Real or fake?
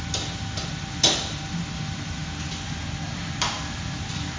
real